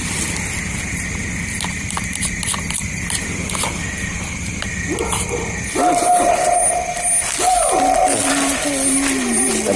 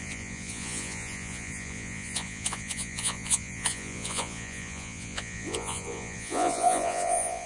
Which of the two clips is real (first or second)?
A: first